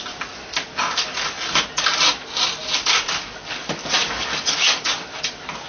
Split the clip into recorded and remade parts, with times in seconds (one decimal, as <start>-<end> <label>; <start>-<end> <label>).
0.0-2.7 recorded; 2.7-5.2 remade; 5.2-5.7 recorded